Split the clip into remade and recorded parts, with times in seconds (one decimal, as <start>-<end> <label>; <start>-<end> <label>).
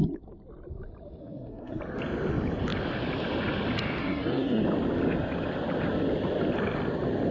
0.0-1.2 recorded; 1.2-1.8 remade; 1.8-4.0 recorded; 4.0-4.6 remade; 4.6-7.3 recorded